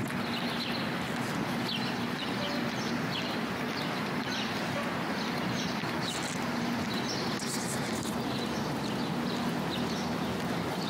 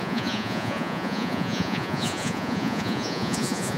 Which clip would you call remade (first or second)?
second